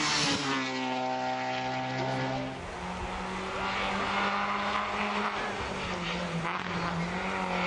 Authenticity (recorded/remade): recorded